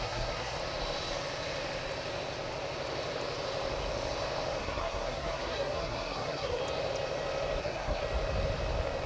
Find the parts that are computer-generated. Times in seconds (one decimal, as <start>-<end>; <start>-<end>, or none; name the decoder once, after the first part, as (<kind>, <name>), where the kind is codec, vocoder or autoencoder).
0.0-0.6 (codec, SNAC); 4.6-6.6; 7.6-8.0